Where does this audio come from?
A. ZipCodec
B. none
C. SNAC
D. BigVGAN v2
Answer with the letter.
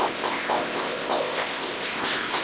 A